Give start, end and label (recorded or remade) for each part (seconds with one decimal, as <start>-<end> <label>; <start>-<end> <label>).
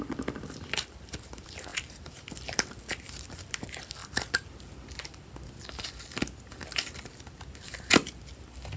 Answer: 0.0-4.0 remade; 4.0-8.8 recorded